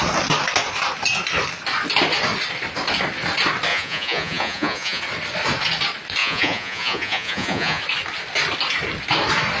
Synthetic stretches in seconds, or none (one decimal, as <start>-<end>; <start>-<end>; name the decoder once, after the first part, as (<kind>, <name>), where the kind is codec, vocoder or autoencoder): 3.7-5.0 (vocoder, Vocos); 6.2-7.8